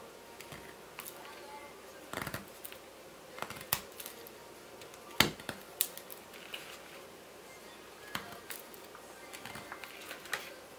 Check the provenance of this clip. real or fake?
real